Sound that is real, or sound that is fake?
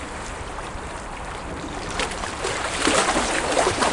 fake